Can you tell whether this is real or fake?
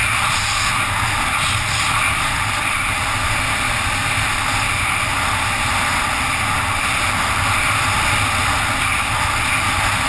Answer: real